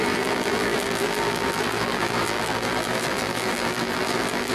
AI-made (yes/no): yes